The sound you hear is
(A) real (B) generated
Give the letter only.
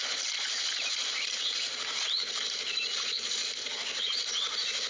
A